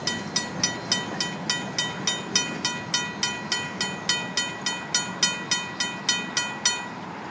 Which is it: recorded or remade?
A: recorded